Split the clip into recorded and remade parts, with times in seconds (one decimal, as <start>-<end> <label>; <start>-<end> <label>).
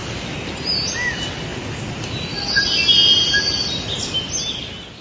0.0-5.0 recorded